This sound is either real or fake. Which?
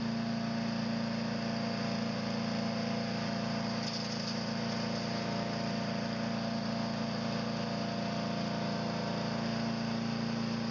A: real